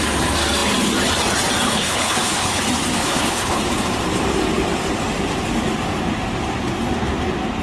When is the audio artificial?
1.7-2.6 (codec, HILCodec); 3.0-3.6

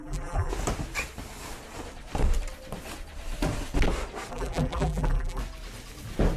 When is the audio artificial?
0.0-0.5 (vocoder, BigVGAN v2); 4.3-5.4

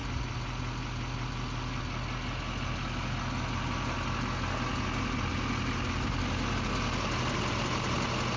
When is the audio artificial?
none

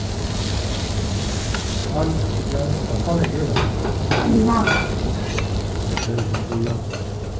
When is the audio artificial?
0.8-1.8 (vocoder, BigVGAN v2); 2.9-4.6; 6.4-7.4

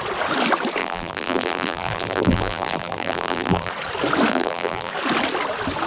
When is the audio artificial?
0.8-3.7 (vocoder, BigVGAN v2); 4.3-4.9